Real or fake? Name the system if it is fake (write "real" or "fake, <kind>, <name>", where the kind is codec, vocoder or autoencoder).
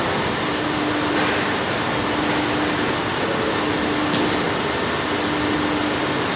real